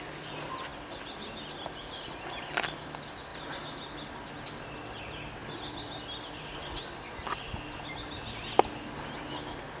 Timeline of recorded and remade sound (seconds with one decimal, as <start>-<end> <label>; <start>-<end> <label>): 0.0-9.8 recorded